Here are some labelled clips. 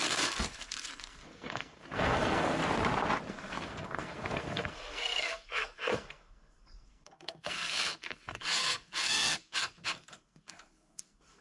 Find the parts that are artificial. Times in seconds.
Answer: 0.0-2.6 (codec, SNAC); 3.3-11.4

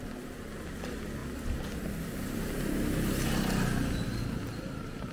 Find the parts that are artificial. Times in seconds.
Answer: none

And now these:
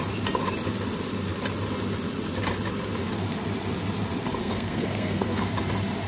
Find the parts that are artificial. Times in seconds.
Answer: 4.4-5.4 (codec, SNAC)

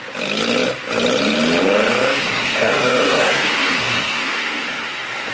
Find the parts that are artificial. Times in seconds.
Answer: 2.2-5.3 (codec, SNAC)

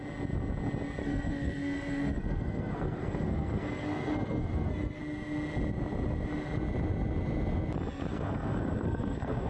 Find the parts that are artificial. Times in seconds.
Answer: 1.0-5.0 (codec, SNAC); 8.1-9.5

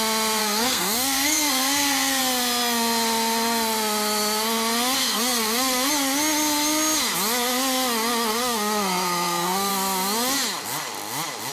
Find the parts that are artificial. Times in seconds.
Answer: 0.4-2.2 (codec, SNAC); 5.0-5.9; 8.3-9.7

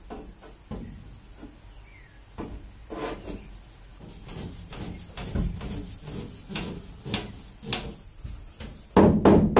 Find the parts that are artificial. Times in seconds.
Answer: none